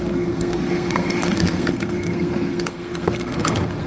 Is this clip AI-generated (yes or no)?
yes